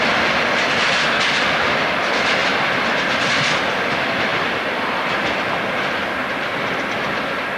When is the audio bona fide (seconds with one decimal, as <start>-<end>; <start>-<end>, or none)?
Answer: 0.0-2.4; 3.2-4.3; 5.6-6.2; 6.8-7.6